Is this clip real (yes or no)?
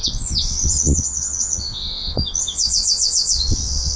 no